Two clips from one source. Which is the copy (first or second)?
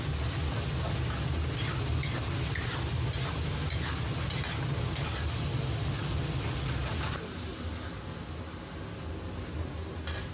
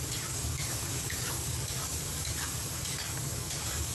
second